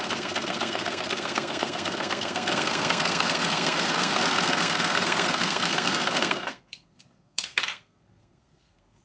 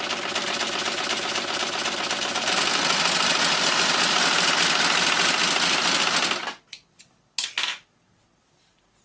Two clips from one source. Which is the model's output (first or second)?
first